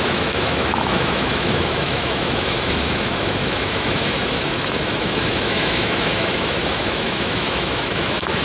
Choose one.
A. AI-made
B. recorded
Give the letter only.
A